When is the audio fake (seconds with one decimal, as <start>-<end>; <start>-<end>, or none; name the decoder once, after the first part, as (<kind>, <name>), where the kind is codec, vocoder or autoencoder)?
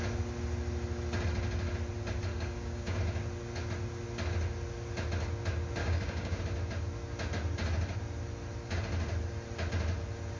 2.3-3.0 (codec, DAC); 5.8-6.4